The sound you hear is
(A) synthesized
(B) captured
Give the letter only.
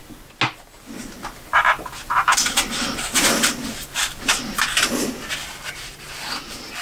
B